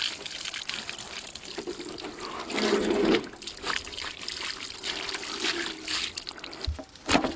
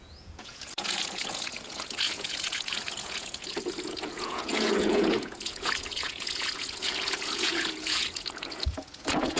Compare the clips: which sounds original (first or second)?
first